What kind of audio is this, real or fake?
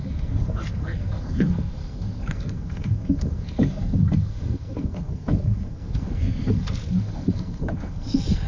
fake